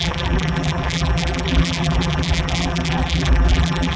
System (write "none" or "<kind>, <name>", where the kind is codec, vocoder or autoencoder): vocoder, BigVGAN v2